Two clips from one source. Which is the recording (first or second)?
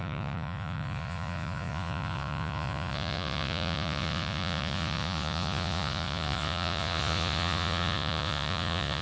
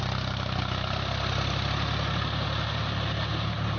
second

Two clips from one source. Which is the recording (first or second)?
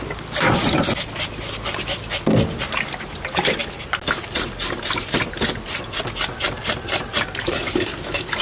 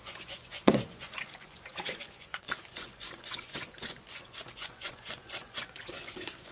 first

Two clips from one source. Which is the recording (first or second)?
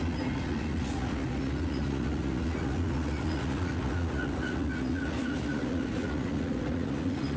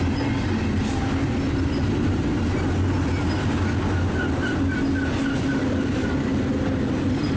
second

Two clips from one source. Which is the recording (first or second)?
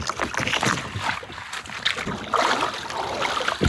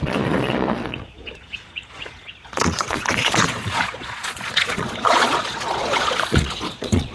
first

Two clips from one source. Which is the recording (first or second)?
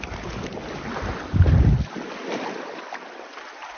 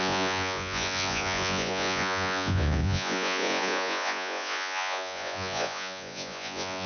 first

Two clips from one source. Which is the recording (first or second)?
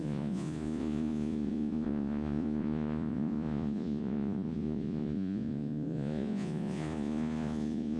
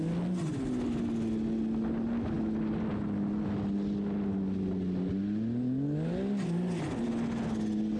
second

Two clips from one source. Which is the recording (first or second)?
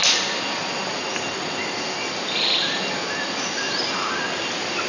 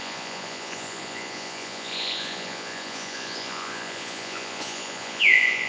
first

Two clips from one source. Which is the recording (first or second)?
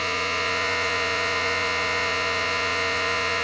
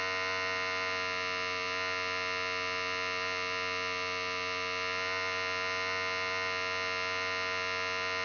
second